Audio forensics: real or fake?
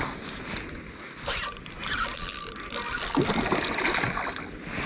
real